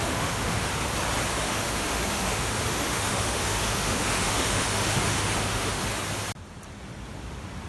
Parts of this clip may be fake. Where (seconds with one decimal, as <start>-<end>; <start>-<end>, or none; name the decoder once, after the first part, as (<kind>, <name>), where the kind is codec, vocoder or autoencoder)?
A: 0.0-0.7 (autoencoder, DAC-VAE); 1.3-5.8